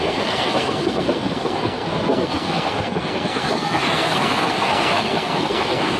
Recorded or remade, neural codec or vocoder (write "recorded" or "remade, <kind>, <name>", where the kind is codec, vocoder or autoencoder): remade, codec, SNAC